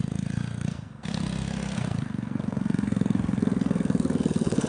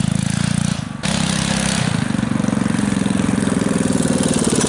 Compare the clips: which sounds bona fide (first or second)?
second